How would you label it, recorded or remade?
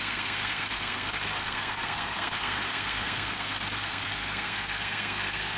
remade